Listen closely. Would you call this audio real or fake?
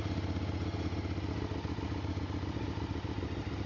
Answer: real